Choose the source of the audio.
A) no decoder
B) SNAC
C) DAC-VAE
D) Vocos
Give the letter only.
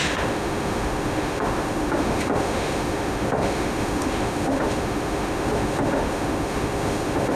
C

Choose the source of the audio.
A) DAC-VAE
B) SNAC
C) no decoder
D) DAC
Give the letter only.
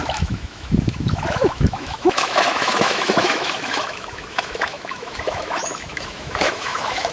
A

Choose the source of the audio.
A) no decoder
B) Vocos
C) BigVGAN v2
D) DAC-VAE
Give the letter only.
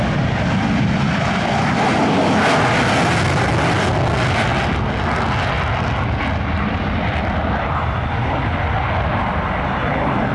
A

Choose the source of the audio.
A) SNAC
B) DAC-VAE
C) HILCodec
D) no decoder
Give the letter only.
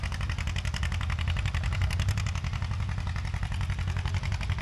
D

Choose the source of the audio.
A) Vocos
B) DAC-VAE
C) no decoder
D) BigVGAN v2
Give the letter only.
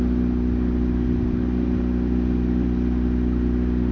C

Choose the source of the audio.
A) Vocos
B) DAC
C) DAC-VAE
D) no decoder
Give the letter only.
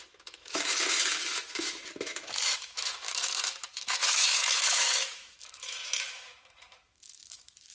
C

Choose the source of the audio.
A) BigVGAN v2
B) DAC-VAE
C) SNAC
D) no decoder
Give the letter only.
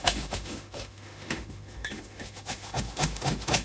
B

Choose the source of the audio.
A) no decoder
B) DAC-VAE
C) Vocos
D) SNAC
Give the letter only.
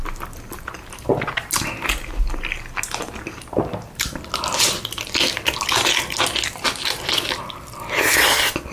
A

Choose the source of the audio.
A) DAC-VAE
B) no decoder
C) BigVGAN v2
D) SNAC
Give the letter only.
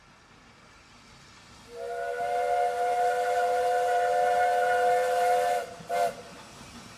B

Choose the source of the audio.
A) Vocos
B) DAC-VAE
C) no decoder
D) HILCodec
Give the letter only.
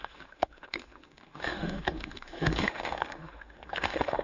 B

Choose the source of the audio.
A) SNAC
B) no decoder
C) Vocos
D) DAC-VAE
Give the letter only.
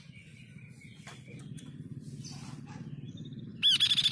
B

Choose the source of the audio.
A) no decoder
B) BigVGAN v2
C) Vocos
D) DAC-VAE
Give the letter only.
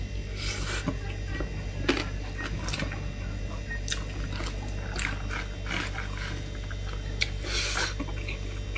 A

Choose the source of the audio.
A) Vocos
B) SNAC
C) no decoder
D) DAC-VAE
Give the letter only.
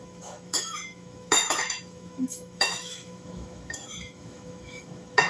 D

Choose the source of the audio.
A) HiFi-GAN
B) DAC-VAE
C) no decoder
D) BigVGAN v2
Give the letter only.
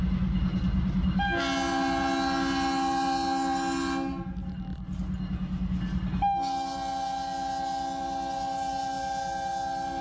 C